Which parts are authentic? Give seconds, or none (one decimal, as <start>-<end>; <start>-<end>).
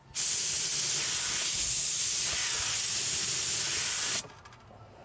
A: 0.0-5.0